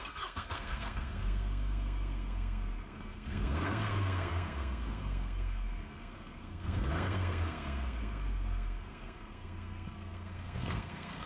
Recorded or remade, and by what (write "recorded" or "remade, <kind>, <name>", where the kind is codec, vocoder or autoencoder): remade, codec, SNAC